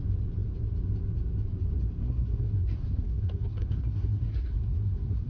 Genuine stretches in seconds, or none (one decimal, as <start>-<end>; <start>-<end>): 0.0-2.0